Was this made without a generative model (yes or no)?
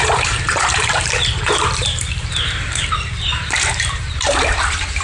no